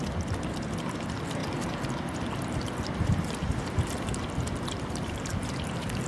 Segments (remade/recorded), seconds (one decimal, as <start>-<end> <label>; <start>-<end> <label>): 0.0-6.1 recorded